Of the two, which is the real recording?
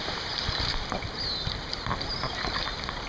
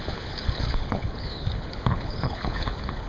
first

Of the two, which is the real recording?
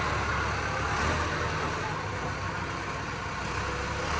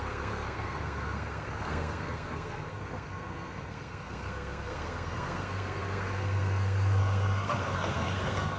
first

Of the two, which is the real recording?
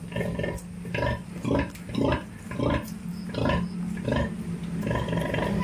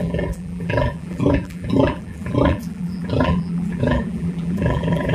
first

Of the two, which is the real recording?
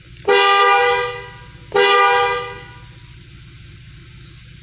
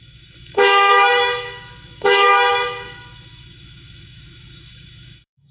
first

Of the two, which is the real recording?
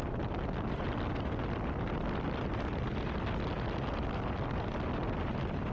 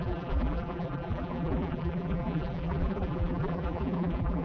first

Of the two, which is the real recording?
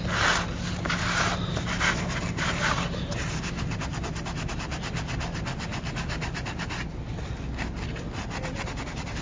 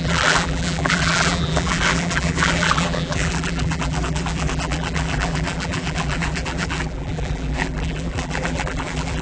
first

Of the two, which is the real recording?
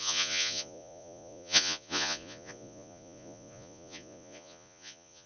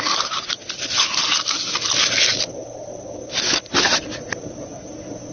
second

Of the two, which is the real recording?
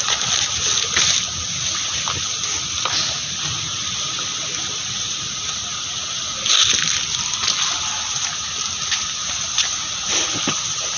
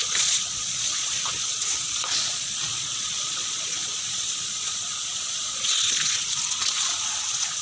first